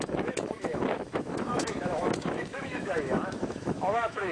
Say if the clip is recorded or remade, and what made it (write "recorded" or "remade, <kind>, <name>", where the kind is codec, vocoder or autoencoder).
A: remade, autoencoder, DAC-VAE